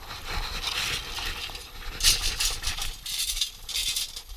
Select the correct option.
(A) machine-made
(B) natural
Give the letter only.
B